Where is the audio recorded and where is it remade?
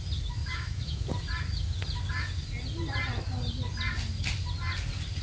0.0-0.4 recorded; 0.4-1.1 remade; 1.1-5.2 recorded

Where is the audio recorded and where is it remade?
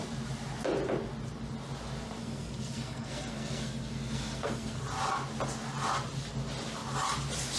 0.0-2.2 recorded; 2.2-4.8 remade; 4.8-7.6 recorded